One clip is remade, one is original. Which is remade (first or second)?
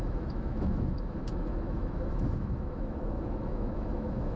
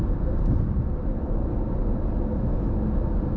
first